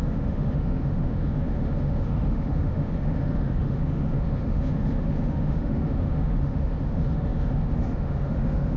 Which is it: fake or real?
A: fake